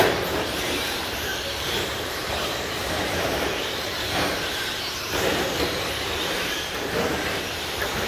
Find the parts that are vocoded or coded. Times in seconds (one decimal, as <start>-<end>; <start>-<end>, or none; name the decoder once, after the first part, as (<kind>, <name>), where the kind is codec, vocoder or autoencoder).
0.0-8.1 (vocoder, BigVGAN v2)